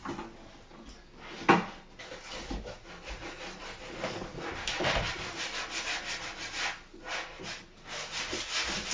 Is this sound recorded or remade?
recorded